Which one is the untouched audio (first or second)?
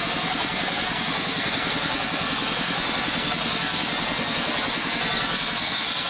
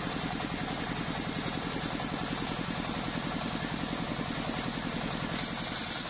second